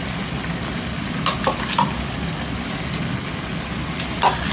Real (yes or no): yes